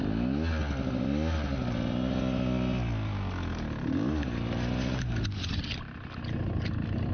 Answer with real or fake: real